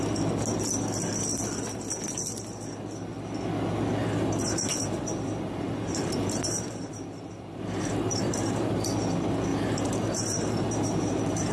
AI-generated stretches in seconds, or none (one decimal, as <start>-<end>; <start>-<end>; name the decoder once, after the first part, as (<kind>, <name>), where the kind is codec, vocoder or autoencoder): 4.4-8.9 (vocoder, BigVGAN v2); 9.5-11.5